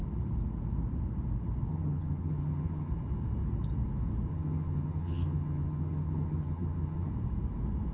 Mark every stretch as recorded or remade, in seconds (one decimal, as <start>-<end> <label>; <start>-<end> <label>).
0.0-1.7 recorded; 1.7-2.9 remade; 2.9-4.3 recorded; 4.3-7.1 remade; 7.1-7.9 recorded